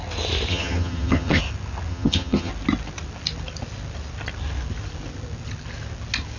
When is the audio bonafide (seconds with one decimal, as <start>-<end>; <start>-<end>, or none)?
0.0-0.5; 1.4-1.9; 2.5-6.4